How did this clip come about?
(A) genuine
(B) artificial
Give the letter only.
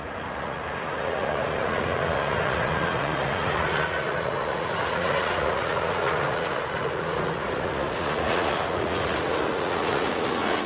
B